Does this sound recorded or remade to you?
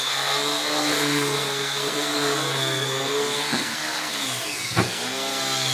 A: remade